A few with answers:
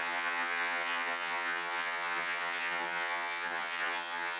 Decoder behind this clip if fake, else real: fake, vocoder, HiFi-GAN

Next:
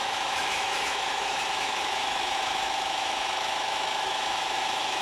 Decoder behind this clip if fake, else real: fake, autoencoder, DAC-VAE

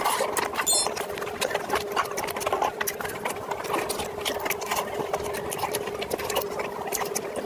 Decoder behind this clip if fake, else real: real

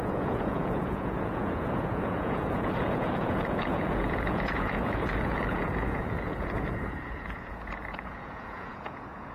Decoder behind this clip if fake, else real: fake, vocoder, Vocos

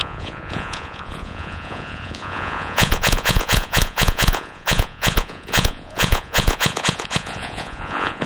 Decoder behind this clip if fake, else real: fake, vocoder, Vocos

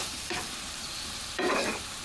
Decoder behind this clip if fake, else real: fake, vocoder, BigVGAN v2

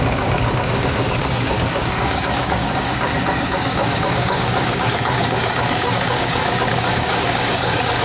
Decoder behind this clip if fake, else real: fake, codec, DAC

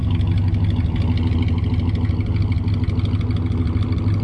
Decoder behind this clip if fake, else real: real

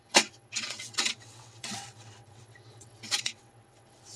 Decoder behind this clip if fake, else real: fake, vocoder, WaveNeXt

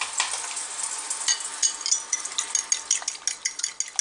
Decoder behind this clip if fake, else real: real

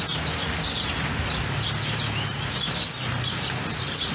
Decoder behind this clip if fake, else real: real